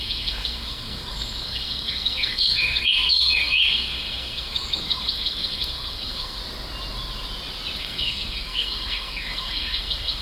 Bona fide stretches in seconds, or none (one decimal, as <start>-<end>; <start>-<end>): 6.4-7.8